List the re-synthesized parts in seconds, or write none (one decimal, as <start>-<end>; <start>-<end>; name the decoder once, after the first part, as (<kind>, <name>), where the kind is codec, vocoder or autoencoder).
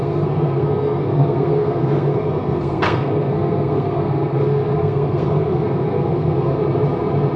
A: 0.0-6.6 (codec, SNAC)